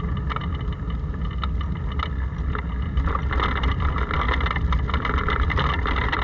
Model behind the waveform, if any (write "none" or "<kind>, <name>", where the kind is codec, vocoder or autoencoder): none